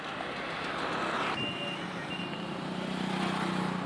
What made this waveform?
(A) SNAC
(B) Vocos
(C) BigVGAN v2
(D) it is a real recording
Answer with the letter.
D